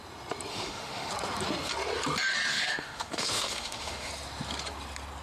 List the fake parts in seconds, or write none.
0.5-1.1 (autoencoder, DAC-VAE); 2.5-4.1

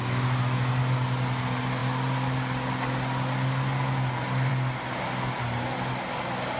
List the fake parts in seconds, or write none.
none

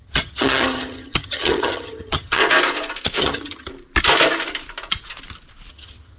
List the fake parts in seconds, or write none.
0.0-2.4 (vocoder, HiFi-GAN); 3.2-3.7; 5.7-6.2